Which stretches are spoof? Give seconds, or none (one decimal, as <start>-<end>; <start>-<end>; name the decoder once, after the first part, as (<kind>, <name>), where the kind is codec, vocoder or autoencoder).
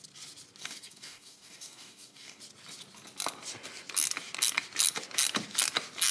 0.6-2.4 (codec, DAC)